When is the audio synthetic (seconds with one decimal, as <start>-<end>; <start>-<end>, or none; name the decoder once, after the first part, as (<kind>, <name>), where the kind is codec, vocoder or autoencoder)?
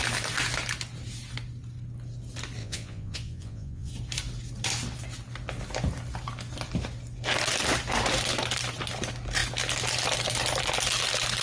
2.6-3.9 (vocoder, Vocos)